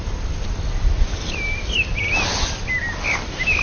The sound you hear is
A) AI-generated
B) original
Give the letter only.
B